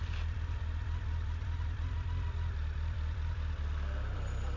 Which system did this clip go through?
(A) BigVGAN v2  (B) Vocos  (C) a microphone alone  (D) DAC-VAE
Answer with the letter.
C